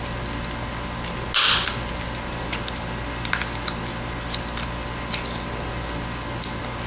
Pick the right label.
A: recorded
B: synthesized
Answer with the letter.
A